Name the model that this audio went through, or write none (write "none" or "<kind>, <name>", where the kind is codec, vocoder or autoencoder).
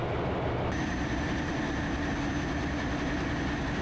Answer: none